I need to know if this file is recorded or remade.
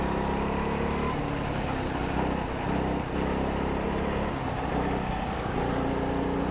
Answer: recorded